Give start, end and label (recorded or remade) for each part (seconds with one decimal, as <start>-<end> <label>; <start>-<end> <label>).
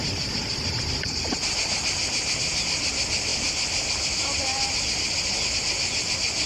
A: 0.0-6.5 recorded